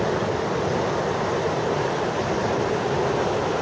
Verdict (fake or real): real